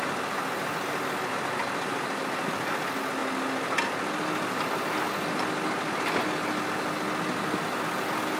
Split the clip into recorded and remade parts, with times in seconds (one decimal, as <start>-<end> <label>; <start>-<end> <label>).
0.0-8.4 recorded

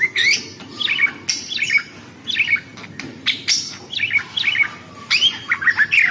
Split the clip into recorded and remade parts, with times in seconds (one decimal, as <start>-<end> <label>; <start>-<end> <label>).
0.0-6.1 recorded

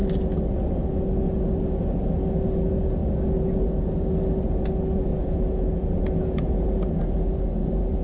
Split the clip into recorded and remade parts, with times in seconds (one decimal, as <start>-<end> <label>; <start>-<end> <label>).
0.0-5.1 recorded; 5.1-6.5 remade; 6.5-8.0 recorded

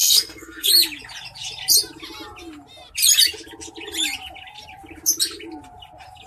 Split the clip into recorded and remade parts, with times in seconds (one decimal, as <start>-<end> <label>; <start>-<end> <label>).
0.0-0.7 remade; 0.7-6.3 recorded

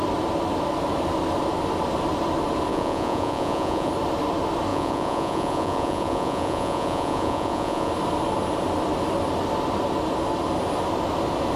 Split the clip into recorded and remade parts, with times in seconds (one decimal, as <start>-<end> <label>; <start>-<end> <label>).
0.0-2.7 recorded; 2.7-3.9 remade; 3.9-4.7 recorded; 4.7-7.9 remade; 7.9-11.6 recorded

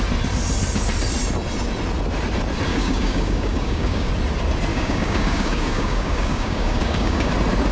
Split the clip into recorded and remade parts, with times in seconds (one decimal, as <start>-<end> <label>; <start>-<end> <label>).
0.0-2.7 recorded; 2.7-4.1 remade; 4.1-4.7 recorded; 4.7-7.3 remade; 7.3-7.7 recorded

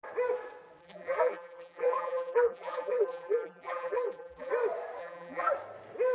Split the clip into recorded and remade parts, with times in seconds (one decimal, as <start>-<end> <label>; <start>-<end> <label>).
0.0-0.8 recorded; 0.8-4.5 remade; 4.5-5.0 recorded; 5.0-5.5 remade; 5.5-6.1 recorded